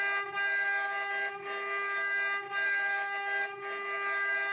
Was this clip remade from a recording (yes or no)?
no